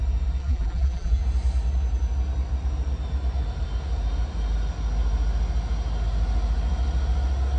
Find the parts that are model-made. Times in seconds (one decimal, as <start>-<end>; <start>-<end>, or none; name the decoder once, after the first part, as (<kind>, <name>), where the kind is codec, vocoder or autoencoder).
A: 0.4-1.2 (vocoder, BigVGAN v2)